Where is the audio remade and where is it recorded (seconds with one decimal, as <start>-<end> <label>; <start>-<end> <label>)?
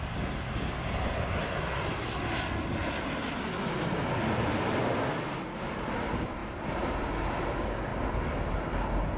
0.0-9.2 recorded